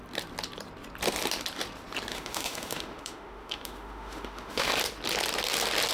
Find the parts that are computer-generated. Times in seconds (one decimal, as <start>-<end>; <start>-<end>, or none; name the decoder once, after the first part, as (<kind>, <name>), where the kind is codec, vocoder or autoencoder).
2.1-4.8 (autoencoder, DAC-VAE)